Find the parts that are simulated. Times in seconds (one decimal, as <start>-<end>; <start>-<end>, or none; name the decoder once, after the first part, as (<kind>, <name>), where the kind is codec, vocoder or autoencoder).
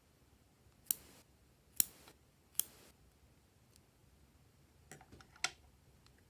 none